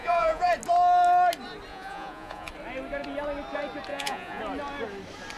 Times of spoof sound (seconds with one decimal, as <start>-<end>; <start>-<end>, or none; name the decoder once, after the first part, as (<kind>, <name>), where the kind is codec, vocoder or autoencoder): 0.0-0.5 (vocoder, Vocos); 1.7-2.5; 3.9-4.4

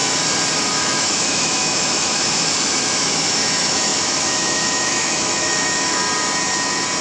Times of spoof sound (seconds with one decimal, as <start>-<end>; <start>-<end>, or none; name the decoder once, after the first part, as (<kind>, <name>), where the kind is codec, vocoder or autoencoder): 0.7-6.0 (autoencoder, DAC-VAE)

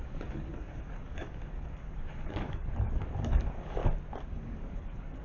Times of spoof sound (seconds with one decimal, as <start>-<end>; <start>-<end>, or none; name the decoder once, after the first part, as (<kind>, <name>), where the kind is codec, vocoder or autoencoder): 0.0-3.8 (codec, DAC); 4.3-5.2

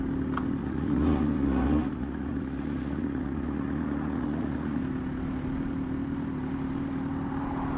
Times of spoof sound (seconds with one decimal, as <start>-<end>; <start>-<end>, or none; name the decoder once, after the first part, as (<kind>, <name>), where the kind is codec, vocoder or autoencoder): 0.6-4.8 (vocoder, Vocos)

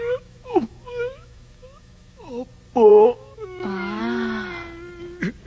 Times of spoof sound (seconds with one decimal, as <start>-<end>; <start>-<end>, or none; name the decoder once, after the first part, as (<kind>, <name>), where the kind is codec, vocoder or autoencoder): 0.0-2.3 (autoencoder, DAC-VAE); 2.9-4.0

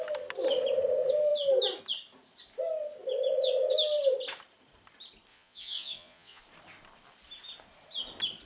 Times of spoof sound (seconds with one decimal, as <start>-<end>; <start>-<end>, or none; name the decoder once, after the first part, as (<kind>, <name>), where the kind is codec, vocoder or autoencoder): 5.3-6.4 (vocoder, Vocos)

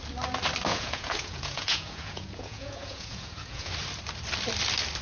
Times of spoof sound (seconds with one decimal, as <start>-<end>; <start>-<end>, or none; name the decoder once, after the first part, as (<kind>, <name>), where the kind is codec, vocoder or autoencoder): 0.7-3.7 (vocoder, Vocos)